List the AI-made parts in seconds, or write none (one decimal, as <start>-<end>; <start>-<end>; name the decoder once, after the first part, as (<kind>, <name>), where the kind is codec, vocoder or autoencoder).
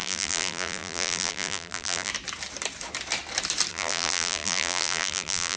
0.0-2.1 (vocoder, BigVGAN v2); 3.7-5.6